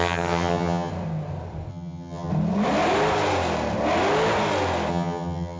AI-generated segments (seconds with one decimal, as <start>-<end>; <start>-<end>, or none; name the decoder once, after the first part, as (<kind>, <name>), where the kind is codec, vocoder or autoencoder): 0.0-0.9 (vocoder, HiFi-GAN); 1.7-2.3; 4.9-5.6

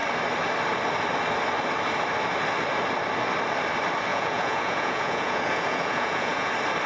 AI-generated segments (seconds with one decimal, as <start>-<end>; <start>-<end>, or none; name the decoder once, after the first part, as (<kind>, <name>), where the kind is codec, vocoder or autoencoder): 4.1-6.5 (vocoder, Vocos)

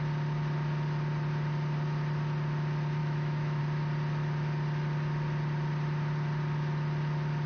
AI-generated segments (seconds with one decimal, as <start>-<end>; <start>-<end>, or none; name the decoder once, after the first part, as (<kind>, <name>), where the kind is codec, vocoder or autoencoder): 3.0-3.6 (autoencoder, DAC-VAE)